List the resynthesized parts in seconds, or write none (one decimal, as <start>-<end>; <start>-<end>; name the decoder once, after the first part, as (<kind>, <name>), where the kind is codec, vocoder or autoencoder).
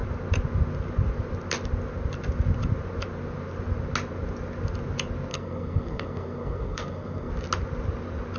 5.3-7.3 (codec, SNAC)